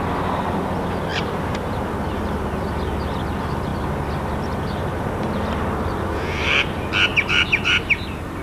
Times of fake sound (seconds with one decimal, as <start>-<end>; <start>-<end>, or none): 1.1-1.9; 7.1-7.7